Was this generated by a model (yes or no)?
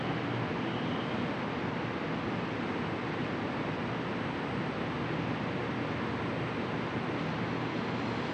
no